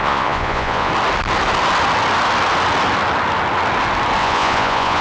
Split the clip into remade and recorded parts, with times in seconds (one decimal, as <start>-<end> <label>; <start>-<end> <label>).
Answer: 0.0-0.9 remade; 0.9-4.2 recorded; 4.2-5.0 remade